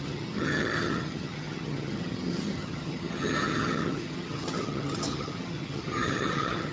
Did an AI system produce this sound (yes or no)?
yes